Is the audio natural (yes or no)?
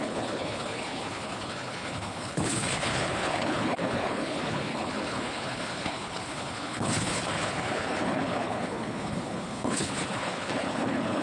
no